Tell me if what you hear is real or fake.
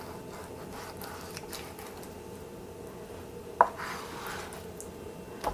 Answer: real